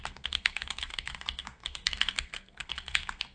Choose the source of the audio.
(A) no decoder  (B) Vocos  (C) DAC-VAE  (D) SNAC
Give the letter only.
D